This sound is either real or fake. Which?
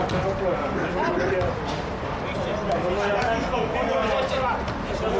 real